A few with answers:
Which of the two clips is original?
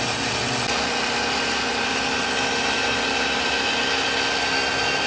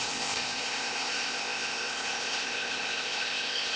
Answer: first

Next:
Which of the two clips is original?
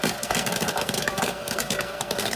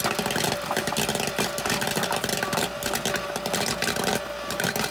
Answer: second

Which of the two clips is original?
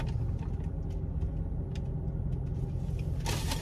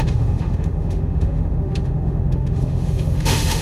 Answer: first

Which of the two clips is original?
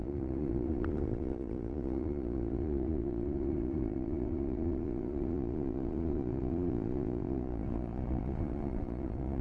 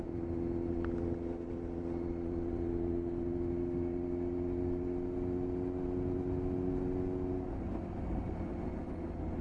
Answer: second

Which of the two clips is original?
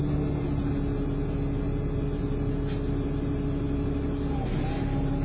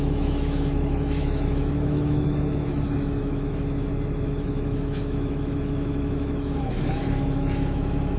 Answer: first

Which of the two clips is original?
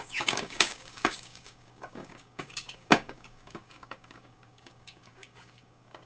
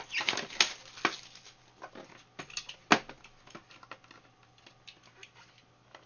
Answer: second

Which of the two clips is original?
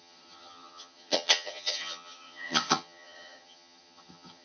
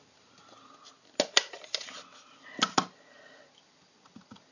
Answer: second